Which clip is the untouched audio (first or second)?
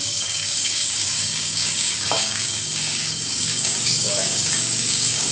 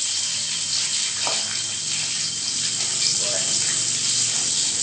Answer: second